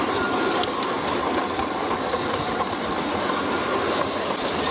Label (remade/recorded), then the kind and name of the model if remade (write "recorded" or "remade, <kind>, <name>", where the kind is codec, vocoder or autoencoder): recorded